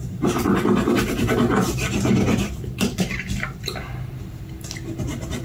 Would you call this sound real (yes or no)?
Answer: no